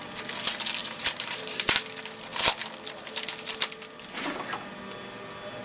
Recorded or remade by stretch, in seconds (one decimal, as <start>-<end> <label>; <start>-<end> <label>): 0.0-0.8 recorded; 0.8-1.8 remade; 1.8-5.6 recorded